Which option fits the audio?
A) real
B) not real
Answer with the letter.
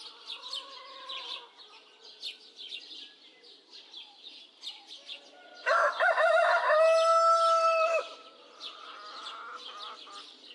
A